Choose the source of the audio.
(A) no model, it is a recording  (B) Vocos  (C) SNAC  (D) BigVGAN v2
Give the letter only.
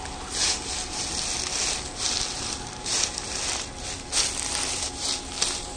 A